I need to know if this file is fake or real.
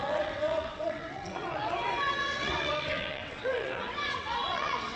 fake